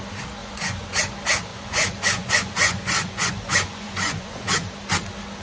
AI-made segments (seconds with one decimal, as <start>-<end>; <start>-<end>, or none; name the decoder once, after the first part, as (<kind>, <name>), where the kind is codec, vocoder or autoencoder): 0.4-1.0 (vocoder, Vocos); 1.5-4.7